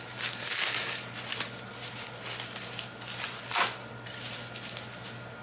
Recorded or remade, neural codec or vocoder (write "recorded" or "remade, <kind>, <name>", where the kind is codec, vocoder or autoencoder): recorded